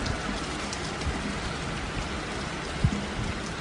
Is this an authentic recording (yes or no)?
yes